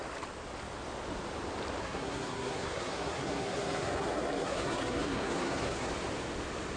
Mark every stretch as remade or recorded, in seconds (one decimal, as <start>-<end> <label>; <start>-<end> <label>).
0.0-1.8 recorded; 1.8-5.9 remade; 5.9-6.8 recorded